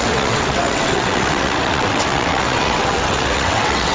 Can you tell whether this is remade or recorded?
remade